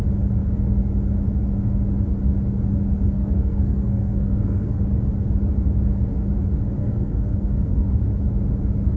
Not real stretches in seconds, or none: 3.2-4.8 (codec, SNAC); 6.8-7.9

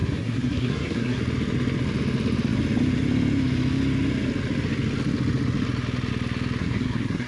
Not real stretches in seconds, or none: 0.0-1.2 (codec, SNAC); 6.6-7.3

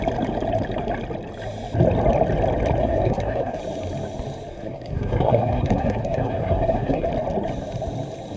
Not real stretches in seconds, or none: 2.8-3.6 (codec, SNAC); 4.5-7.1

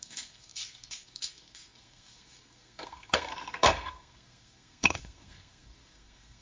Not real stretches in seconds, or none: 0.0-6.4 (codec, SNAC)